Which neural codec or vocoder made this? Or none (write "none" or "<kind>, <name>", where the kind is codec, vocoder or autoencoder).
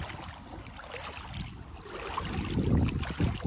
none